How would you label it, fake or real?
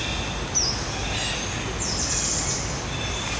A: real